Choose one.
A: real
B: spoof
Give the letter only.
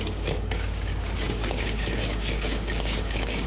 B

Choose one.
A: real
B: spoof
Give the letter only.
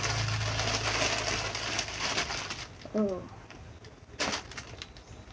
A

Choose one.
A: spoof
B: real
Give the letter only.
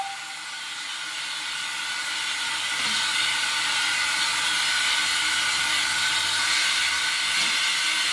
B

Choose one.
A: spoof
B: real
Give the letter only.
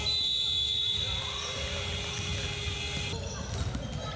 B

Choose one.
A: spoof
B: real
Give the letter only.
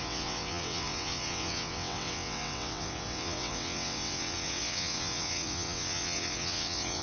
A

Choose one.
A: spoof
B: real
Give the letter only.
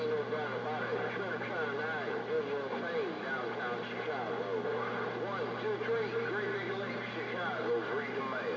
B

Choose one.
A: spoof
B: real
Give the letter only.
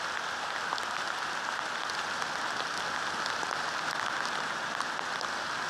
B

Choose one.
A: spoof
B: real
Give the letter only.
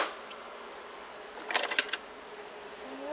B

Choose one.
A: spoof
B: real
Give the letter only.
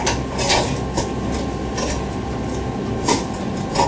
B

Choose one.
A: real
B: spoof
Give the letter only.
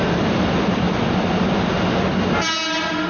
A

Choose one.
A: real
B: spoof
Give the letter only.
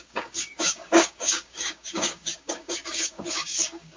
B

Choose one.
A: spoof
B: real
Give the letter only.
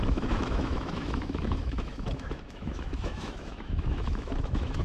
A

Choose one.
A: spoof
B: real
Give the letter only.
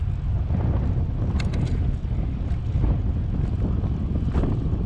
B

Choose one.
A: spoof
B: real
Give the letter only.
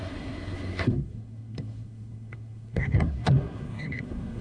A